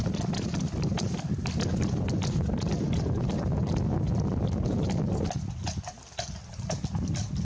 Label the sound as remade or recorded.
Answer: recorded